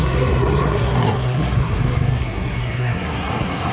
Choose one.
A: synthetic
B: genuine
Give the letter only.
A